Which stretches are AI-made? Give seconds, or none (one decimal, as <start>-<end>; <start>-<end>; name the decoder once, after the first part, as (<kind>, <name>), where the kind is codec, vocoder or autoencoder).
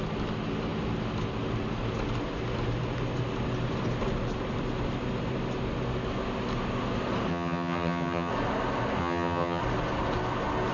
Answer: 7.3-8.3 (vocoder, HiFi-GAN); 9.0-9.6